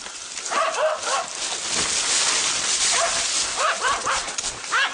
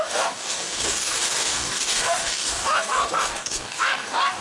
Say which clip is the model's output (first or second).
second